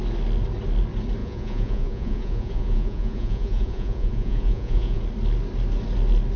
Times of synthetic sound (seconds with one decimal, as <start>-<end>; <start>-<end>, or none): 1.2-5.0

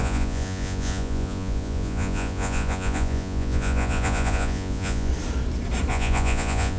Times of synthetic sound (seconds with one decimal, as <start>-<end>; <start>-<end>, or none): 0.0-5.1; 5.9-6.8

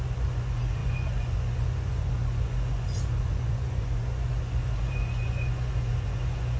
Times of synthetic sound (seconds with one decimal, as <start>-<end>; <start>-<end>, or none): 0.0-6.6

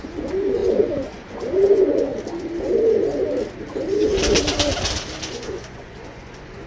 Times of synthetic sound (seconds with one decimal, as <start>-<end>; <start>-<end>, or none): 0.0-2.1; 5.3-6.7

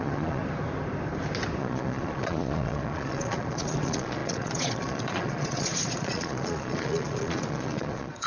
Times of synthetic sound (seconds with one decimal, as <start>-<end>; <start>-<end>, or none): 0.0-0.4; 1.6-8.3

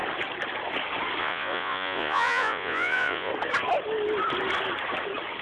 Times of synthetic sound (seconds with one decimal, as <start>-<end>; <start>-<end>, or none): 1.2-3.3

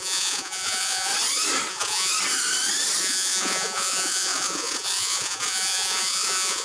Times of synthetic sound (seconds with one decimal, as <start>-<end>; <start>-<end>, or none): 0.0-1.1; 1.7-2.1; 3.0-6.6